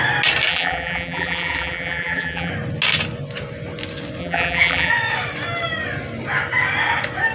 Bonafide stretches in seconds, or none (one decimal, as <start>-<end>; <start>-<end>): 0.0-0.5; 2.5-4.2; 4.9-7.3